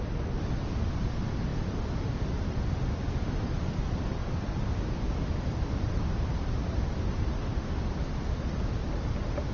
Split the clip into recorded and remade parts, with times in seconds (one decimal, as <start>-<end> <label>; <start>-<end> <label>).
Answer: 0.0-4.2 remade; 4.2-5.2 recorded; 5.2-9.5 remade